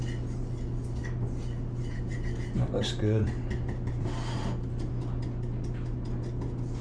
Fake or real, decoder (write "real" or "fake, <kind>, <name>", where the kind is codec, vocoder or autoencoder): real